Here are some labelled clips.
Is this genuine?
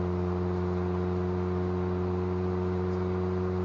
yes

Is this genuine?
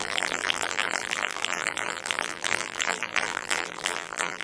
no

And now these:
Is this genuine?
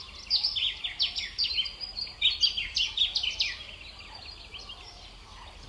yes